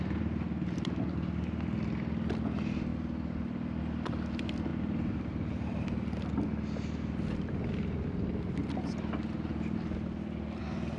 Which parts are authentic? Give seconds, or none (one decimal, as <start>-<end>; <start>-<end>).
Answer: 0.0-11.0